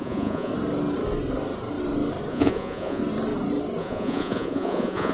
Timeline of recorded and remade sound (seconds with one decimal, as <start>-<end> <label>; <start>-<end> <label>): 0.0-0.5 remade; 0.5-2.3 recorded; 2.3-3.0 remade; 3.0-3.8 recorded; 3.8-5.1 remade